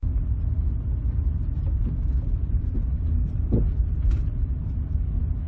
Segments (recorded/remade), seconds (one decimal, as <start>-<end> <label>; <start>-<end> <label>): 0.0-5.5 recorded